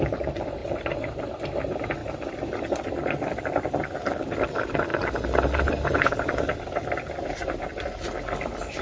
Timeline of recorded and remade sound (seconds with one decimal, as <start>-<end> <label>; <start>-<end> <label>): 0.0-8.8 recorded